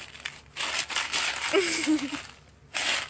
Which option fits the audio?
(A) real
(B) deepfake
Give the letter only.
A